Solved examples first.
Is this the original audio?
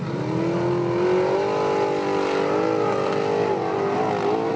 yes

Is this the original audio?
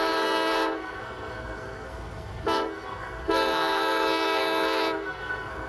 no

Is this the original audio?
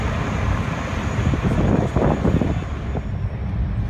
yes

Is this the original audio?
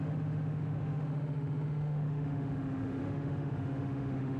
no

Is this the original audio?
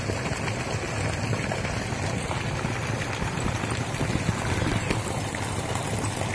yes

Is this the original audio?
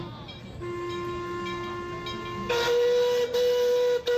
yes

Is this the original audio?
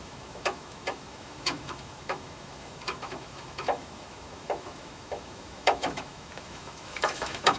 no